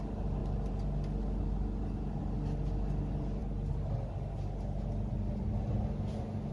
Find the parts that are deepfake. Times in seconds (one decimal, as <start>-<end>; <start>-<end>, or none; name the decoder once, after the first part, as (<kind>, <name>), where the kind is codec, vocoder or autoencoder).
none